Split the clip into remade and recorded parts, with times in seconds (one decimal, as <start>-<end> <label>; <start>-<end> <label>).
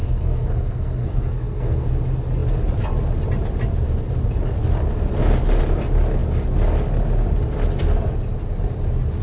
0.0-1.9 remade; 1.9-9.2 recorded